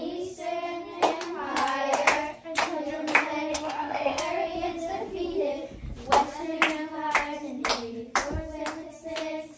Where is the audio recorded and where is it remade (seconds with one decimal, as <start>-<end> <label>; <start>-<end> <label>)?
0.0-3.5 recorded; 3.5-4.2 remade; 4.2-9.6 recorded